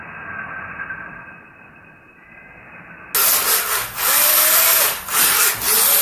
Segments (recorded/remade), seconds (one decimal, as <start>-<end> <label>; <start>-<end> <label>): 0.0-6.0 recorded